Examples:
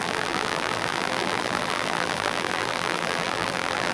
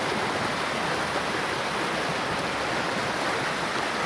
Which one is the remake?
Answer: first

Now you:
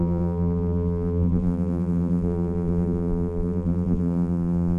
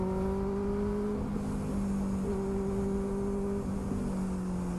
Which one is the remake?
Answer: first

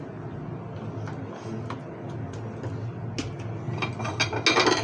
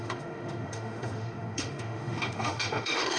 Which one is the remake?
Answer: second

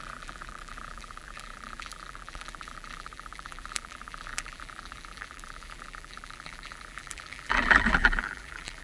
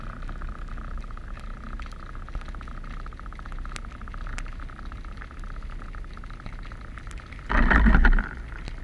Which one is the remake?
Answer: first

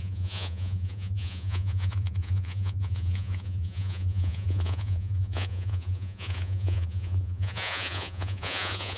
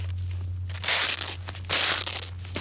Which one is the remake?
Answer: first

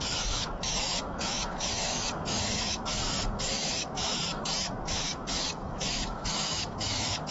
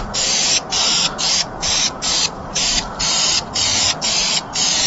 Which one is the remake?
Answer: first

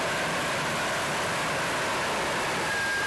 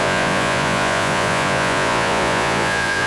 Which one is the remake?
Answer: second